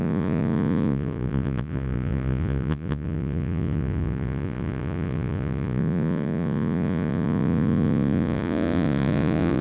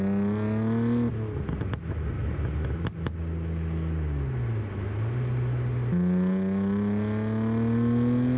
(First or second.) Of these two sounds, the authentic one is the second